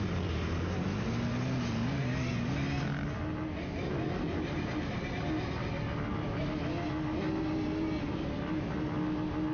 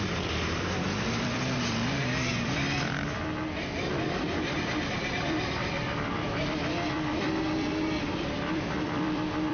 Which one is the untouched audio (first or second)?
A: first